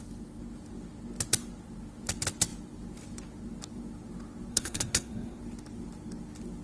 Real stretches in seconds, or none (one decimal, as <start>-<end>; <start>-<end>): 0.0-4.5; 5.4-6.6